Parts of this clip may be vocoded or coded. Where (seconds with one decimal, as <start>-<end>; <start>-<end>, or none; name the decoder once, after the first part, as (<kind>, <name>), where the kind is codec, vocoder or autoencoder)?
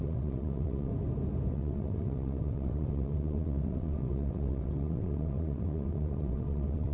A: 0.0-0.9 (vocoder, WaveNeXt); 1.5-6.9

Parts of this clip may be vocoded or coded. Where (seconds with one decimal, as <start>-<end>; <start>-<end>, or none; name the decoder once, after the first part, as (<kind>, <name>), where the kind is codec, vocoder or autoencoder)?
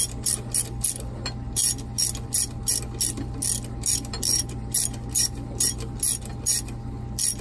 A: none